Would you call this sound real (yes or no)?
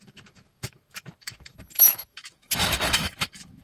no